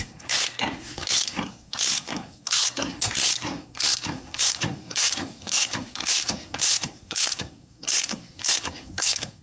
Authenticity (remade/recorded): remade